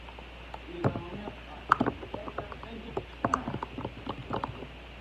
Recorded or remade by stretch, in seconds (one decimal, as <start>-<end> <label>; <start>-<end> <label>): 0.0-5.0 recorded

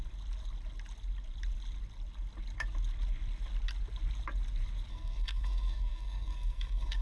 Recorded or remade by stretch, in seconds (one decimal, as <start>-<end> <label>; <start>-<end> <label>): 0.0-4.9 recorded; 4.9-7.0 remade

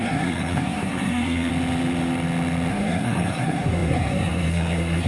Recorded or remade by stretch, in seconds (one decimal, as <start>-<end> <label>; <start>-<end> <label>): 0.0-1.5 remade; 1.5-2.7 recorded; 2.7-5.1 remade